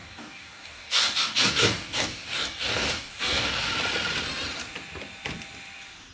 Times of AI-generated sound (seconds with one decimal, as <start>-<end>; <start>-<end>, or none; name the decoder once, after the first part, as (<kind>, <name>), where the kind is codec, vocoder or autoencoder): 0.0-3.7 (codec, DAC)